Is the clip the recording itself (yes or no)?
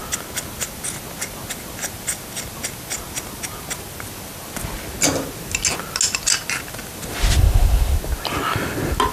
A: yes